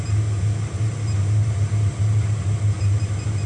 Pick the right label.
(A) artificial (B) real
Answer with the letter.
B